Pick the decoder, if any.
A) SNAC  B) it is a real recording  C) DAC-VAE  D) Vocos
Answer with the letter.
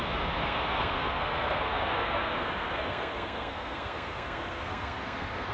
A